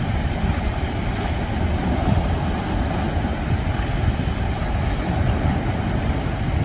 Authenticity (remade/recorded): recorded